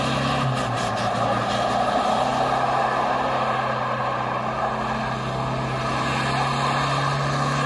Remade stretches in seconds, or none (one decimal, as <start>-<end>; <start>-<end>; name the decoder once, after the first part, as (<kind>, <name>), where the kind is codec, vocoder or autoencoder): none